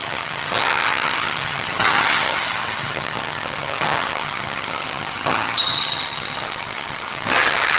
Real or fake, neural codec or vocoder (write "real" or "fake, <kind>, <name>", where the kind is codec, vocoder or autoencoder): fake, vocoder, HiFi-GAN